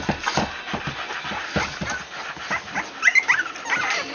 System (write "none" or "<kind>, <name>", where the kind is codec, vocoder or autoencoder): none